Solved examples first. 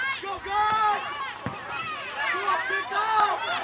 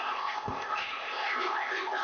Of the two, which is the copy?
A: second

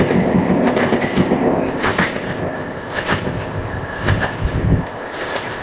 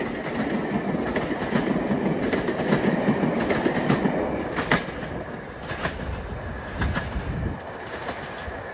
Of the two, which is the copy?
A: first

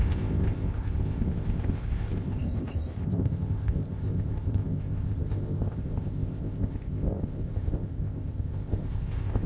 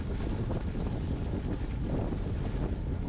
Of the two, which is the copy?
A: first